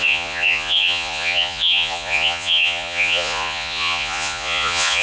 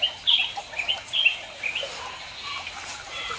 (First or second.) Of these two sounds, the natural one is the second